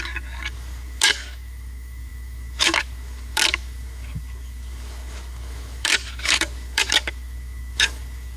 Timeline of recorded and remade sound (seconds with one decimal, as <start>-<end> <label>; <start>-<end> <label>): 0.0-8.4 remade